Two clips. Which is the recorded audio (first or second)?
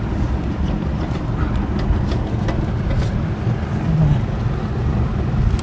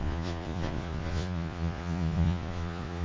first